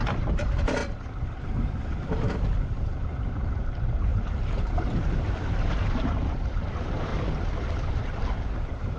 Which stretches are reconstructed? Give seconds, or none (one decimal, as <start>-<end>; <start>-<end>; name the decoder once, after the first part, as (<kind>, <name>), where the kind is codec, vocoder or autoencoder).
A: 0.0-0.8 (vocoder, BigVGAN v2); 1.4-7.1; 7.6-9.0